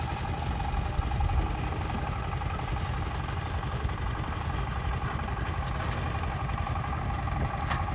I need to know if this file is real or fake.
real